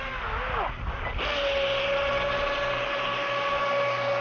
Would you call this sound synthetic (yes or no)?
no